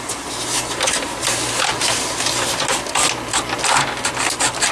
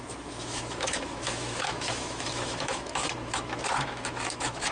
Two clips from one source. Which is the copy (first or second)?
second